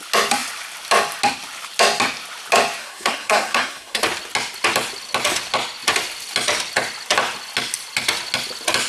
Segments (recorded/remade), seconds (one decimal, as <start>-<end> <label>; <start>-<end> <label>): 0.0-2.8 recorded; 2.8-4.0 remade; 4.0-8.9 recorded

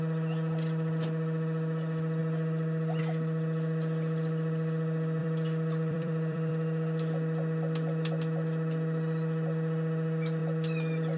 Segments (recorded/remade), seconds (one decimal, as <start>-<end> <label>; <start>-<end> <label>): 0.0-5.2 recorded; 5.2-6.5 remade; 6.5-10.4 recorded; 10.4-11.2 remade

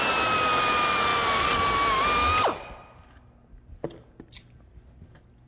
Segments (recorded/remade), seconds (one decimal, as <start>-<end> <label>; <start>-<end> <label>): 0.0-5.5 recorded

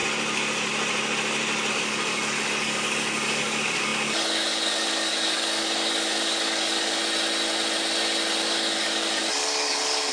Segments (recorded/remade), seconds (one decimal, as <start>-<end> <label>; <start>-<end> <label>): 0.0-1.7 recorded; 1.7-7.0 remade; 7.0-8.4 recorded; 8.4-10.1 remade

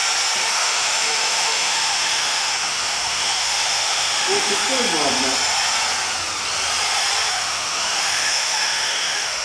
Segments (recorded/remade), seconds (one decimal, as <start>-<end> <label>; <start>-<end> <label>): 0.0-0.5 recorded; 0.5-4.6 remade; 4.6-7.3 recorded; 7.3-9.4 remade

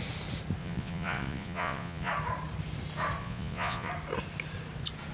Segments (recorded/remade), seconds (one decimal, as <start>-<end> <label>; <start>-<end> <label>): 0.0-0.6 recorded; 0.6-2.1 remade; 2.1-3.2 recorded; 3.2-3.9 remade; 3.9-5.1 recorded

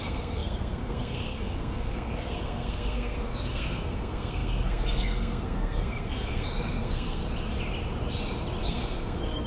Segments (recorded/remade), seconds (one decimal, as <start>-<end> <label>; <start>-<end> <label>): 0.0-7.2 remade; 7.2-8.6 recorded; 8.6-9.5 remade